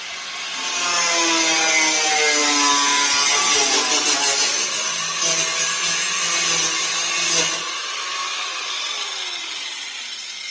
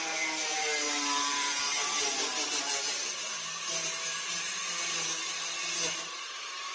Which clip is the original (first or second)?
first